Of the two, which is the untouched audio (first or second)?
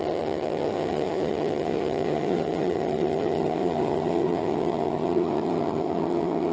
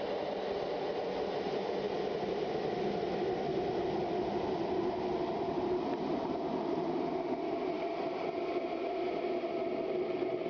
second